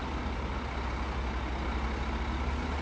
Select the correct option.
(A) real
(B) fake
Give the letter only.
A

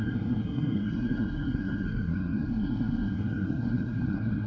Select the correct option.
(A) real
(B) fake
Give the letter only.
B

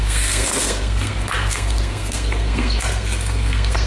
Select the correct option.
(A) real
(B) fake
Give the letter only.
B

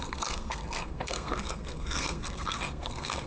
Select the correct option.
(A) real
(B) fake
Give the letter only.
B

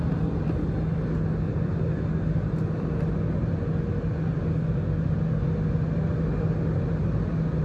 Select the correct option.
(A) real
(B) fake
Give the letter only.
A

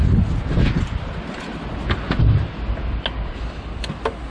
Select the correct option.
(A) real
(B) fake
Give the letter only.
A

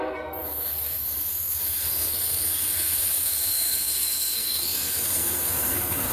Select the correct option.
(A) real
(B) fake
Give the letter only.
B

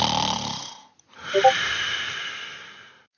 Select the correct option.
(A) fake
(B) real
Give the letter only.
B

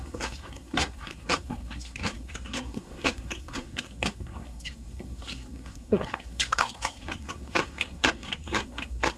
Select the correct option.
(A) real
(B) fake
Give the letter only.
B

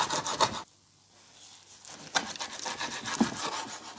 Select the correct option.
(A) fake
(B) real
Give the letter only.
B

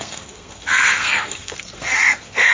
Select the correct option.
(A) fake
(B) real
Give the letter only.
A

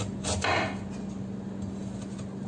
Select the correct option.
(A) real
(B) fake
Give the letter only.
A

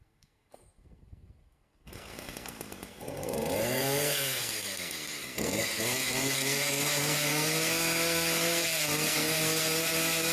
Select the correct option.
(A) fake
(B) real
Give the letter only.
A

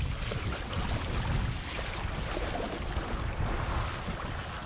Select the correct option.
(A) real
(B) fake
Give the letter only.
A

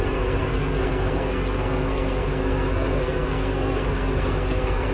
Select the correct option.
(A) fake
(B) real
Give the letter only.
A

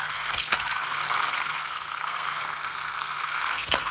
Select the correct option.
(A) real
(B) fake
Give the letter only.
B